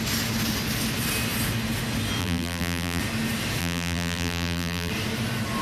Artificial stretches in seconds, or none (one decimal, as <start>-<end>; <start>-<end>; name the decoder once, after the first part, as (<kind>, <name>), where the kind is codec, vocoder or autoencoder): 2.2-3.0 (vocoder, BigVGAN v2); 3.6-4.9